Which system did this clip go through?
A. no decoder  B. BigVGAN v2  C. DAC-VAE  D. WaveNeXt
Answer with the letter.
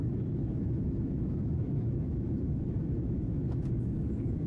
C